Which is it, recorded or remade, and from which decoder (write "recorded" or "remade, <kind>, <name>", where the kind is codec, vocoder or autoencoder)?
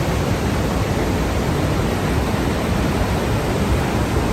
remade, vocoder, BigVGAN v2